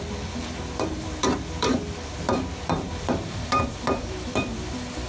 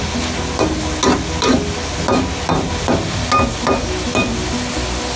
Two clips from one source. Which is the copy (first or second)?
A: first